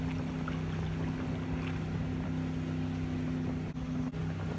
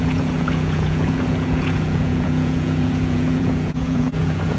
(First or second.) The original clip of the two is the first